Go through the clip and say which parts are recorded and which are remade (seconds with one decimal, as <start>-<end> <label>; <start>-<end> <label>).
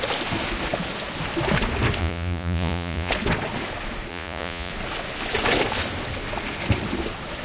0.0-2.0 recorded; 2.0-3.1 remade; 3.1-4.1 recorded; 4.1-4.7 remade; 4.7-7.4 recorded